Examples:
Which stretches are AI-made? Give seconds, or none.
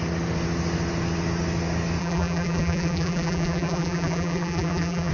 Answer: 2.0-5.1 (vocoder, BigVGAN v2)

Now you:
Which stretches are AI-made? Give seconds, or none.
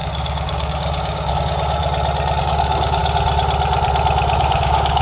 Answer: 0.0-1.8 (codec, DAC); 2.4-3.0; 4.4-5.0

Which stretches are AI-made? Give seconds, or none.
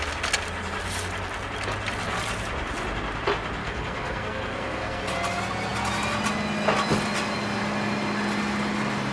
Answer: 3.6-5.0 (codec, SNAC)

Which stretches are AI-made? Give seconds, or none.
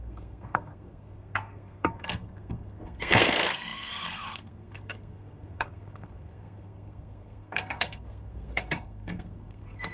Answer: 0.0-9.9 (codec, SNAC)